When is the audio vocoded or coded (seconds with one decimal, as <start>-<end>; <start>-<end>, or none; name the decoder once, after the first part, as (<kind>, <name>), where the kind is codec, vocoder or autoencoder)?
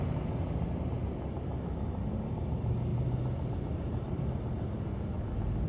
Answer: 2.9-4.2 (vocoder, BigVGAN v2)